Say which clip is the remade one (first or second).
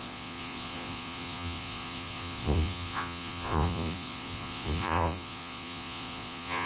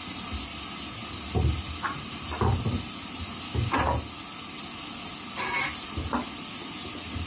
first